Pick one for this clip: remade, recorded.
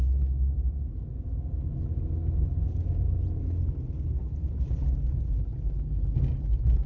recorded